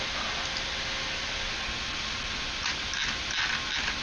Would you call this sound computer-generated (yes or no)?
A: no